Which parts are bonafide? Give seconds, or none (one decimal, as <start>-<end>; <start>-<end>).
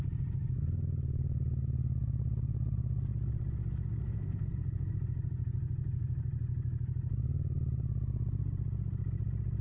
0.0-4.0; 4.5-9.6